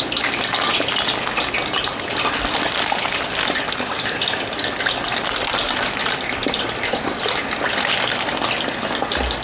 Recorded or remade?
recorded